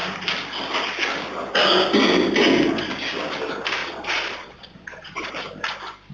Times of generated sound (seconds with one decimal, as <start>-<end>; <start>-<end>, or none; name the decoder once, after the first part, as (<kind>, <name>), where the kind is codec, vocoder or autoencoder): 3.8-5.3 (vocoder, Vocos)